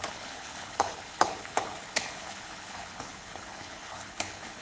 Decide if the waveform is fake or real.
fake